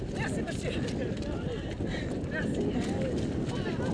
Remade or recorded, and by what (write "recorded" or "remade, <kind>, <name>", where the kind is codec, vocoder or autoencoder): recorded